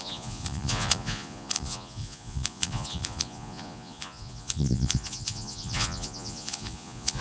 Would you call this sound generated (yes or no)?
yes